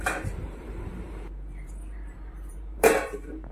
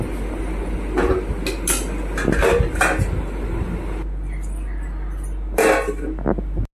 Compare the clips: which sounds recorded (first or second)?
second